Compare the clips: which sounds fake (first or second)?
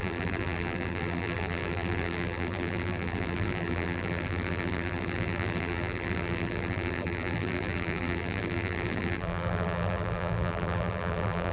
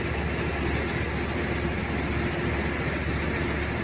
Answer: first